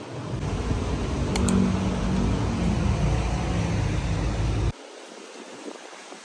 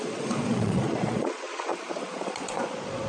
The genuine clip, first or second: first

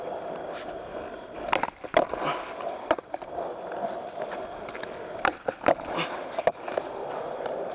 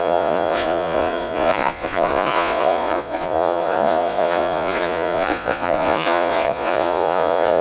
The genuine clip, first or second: first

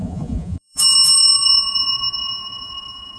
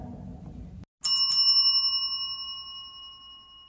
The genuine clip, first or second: second